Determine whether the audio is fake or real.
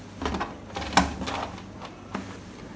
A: real